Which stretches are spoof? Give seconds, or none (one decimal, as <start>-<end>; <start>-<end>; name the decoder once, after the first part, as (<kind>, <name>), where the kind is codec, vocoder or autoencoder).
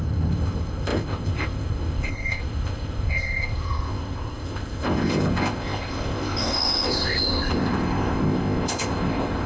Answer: 0.0-9.5 (codec, ZipCodec)